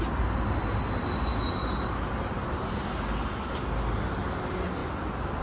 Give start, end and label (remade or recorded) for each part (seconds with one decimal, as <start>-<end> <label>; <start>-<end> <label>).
0.0-1.3 recorded; 1.3-2.7 remade; 2.7-5.4 recorded